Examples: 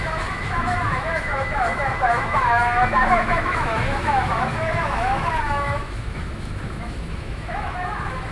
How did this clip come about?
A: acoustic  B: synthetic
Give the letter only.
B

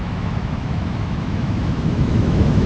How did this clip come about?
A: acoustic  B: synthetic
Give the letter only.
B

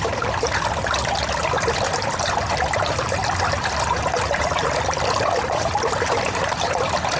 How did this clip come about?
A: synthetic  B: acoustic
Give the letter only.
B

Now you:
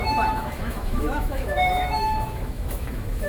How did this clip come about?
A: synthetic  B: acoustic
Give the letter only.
A